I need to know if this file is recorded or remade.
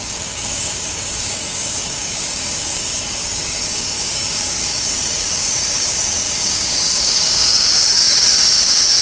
remade